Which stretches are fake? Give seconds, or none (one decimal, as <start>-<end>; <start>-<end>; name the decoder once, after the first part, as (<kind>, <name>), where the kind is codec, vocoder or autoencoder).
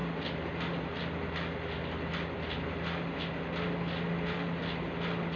none